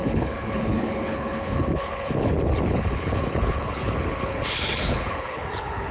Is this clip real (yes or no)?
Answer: no